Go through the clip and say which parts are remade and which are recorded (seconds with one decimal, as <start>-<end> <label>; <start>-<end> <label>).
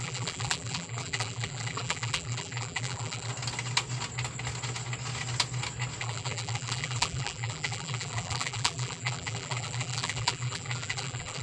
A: 0.0-3.3 remade; 3.3-6.0 recorded; 6.0-11.4 remade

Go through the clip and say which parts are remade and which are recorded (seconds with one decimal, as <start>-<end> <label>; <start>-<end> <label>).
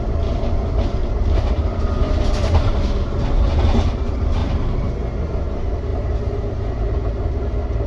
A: 0.0-1.0 recorded; 1.0-1.8 remade; 1.8-4.4 recorded; 4.4-4.9 remade; 4.9-5.9 recorded; 5.9-6.5 remade; 6.5-7.9 recorded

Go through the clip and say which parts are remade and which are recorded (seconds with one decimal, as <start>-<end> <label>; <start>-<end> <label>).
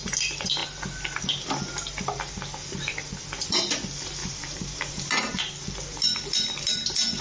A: 0.0-4.2 recorded; 4.2-5.4 remade; 5.4-7.2 recorded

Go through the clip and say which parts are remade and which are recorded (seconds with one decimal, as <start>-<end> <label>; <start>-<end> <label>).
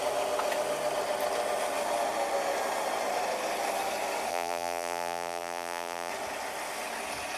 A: 0.0-4.3 recorded; 4.3-6.1 remade; 6.1-7.4 recorded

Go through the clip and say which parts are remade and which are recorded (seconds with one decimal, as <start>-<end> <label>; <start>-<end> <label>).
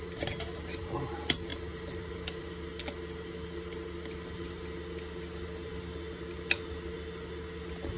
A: 0.0-8.0 recorded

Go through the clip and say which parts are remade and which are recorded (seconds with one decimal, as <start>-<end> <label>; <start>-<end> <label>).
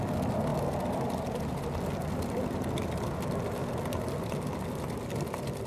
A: 0.0-5.7 recorded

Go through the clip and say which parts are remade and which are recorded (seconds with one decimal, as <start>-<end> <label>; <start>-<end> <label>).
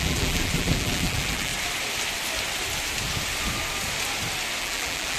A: 0.0-1.5 remade; 1.5-4.6 recorded; 4.6-5.2 remade